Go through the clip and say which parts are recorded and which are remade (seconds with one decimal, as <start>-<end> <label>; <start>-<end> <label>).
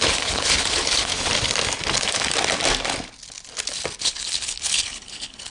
0.0-1.1 remade; 1.1-4.0 recorded; 4.0-5.5 remade